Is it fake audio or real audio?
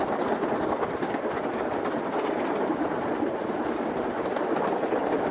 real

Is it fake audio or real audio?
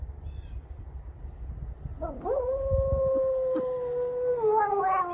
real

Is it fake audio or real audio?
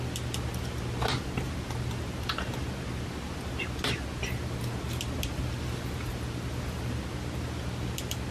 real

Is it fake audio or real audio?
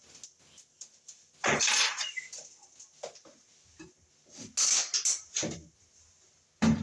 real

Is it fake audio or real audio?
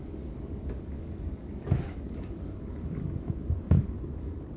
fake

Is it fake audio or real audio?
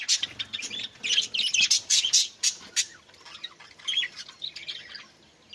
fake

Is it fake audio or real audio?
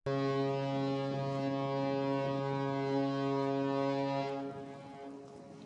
real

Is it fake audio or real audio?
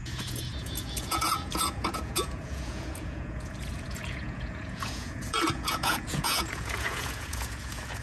fake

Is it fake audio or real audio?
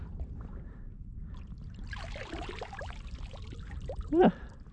fake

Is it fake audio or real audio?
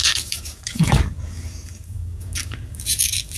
fake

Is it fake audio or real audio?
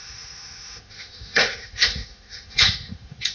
fake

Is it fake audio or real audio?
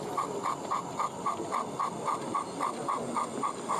real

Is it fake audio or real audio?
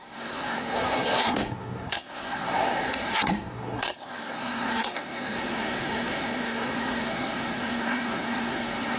fake